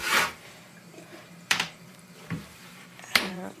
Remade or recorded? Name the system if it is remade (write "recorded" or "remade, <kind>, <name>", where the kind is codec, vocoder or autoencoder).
remade, vocoder, BigVGAN v2